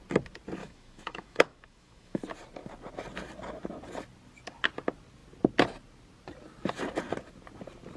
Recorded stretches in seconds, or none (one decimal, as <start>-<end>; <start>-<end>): 0.0-0.6; 2.2-8.0